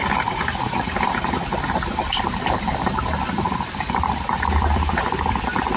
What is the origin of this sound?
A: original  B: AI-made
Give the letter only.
B